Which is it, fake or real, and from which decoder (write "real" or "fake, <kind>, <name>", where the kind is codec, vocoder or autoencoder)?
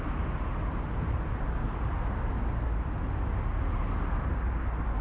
real